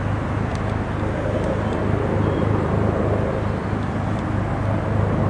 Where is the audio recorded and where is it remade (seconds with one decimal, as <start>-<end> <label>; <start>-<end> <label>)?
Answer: 0.0-5.3 recorded